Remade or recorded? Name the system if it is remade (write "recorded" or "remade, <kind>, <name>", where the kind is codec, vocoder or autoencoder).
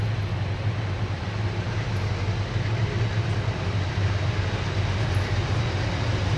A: recorded